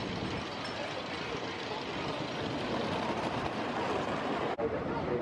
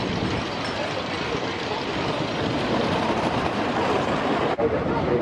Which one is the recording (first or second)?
first